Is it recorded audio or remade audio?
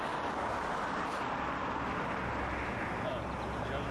recorded